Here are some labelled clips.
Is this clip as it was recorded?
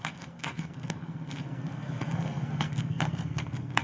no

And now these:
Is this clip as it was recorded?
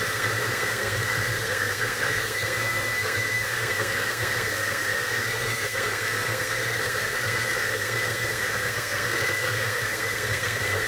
no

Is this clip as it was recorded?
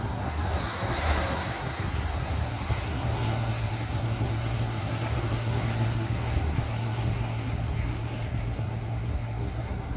no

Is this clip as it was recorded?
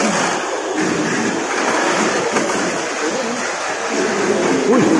yes